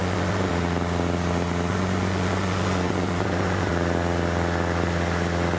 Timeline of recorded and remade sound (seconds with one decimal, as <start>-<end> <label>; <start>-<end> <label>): 0.0-0.5 remade; 0.5-1.7 recorded; 1.7-3.7 remade; 3.7-5.6 recorded